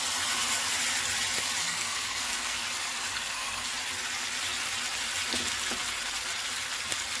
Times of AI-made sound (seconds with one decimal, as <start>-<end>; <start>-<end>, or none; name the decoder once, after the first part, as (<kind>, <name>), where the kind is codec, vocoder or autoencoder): 1.6-2.6 (codec, SNAC); 3.1-3.7